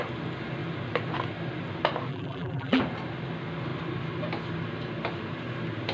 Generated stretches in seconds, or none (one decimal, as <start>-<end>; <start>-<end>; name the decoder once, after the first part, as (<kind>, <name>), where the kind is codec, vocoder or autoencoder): 2.1-2.8 (vocoder, BigVGAN v2)